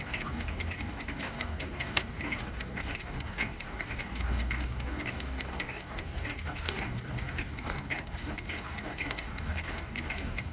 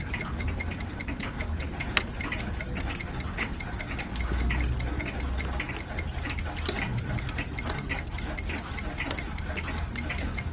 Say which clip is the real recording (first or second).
second